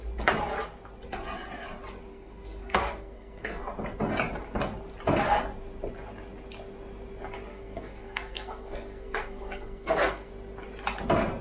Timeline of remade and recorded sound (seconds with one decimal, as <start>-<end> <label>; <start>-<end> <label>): 0.0-2.1 recorded; 2.1-3.6 remade; 3.6-7.5 recorded; 7.5-10.3 remade; 10.3-11.4 recorded